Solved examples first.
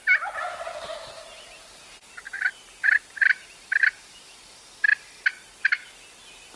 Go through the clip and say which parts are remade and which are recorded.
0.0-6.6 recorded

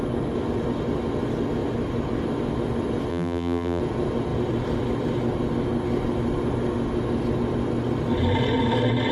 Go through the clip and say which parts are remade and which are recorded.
0.0-3.1 recorded; 3.1-3.8 remade; 3.8-9.1 recorded

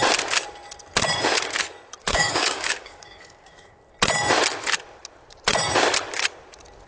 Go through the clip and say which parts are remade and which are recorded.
0.0-2.0 recorded; 2.0-3.8 remade; 3.8-6.9 recorded

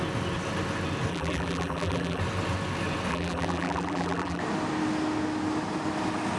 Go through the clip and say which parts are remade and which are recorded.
0.0-1.1 recorded; 1.1-2.2 remade; 2.2-3.1 recorded; 3.1-4.4 remade; 4.4-6.4 recorded

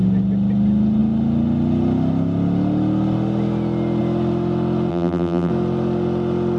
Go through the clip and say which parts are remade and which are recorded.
0.0-4.9 recorded; 4.9-5.5 remade; 5.5-6.6 recorded